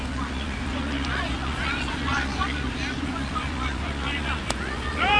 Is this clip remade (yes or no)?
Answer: yes